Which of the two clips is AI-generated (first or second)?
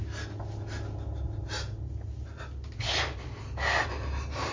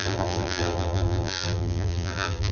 second